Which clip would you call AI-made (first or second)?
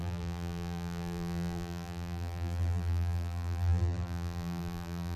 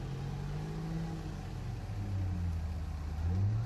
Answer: first